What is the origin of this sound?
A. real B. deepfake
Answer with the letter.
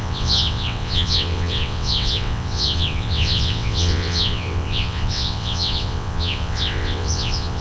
B